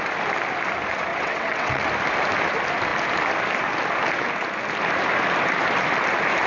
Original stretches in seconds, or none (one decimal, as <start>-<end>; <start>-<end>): 0.0-1.1; 1.9-6.5

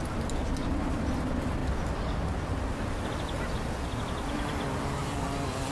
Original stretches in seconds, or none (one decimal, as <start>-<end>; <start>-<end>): 0.0-5.7

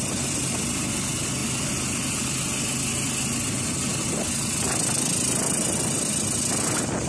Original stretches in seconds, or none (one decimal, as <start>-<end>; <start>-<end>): 0.0-7.1

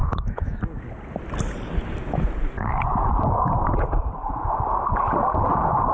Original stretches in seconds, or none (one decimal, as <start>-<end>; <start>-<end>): 0.6-5.9

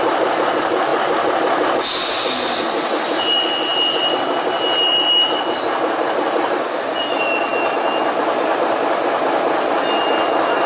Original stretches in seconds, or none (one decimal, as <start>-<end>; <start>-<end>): 0.0-10.7

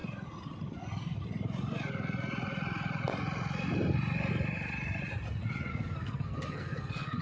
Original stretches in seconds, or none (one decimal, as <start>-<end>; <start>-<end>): 0.0-5.7

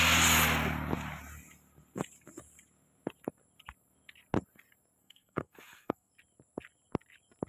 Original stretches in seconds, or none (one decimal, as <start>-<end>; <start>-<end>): 0.0-5.0; 6.1-7.5